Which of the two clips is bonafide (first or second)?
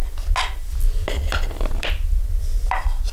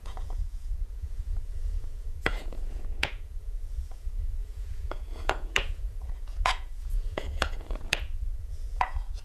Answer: first